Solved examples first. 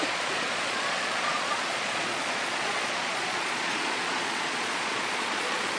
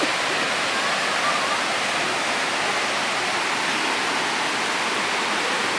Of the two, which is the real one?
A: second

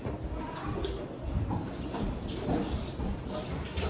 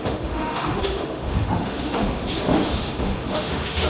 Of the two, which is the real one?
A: first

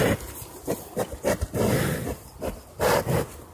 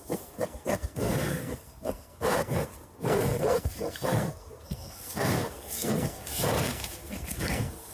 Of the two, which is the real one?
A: first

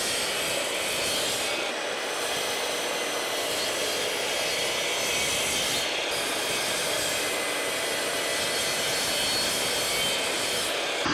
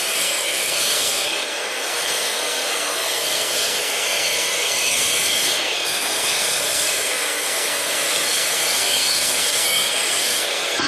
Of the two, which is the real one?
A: first